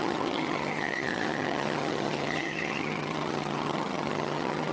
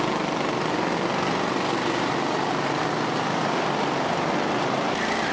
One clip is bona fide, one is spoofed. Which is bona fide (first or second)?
second